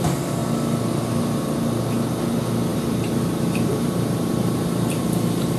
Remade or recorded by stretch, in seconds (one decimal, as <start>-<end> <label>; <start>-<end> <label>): 0.0-2.7 recorded; 2.7-5.0 remade; 5.0-5.6 recorded

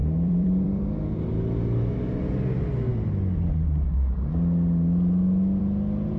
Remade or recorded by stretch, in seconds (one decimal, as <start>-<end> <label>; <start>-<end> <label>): 0.0-0.9 remade; 0.9-6.2 recorded